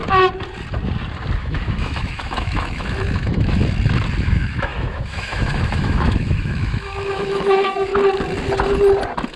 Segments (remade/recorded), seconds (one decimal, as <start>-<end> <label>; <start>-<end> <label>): 0.0-1.4 recorded; 1.4-3.6 remade; 3.6-4.2 recorded; 4.2-7.9 remade; 7.9-9.4 recorded